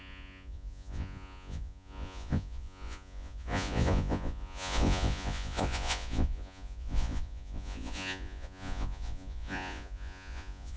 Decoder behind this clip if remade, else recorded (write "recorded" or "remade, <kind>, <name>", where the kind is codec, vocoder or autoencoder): remade, vocoder, Vocos